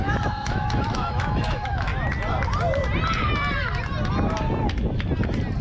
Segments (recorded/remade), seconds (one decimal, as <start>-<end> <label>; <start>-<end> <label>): 0.0-1.9 remade; 1.9-5.6 recorded